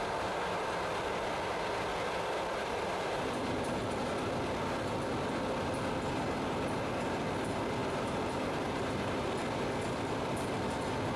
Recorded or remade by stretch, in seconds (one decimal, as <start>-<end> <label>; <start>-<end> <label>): 0.0-2.6 recorded; 2.6-3.7 remade; 3.7-7.8 recorded; 7.8-9.3 remade; 9.3-11.2 recorded